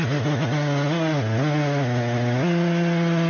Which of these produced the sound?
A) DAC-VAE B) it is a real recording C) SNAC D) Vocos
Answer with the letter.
B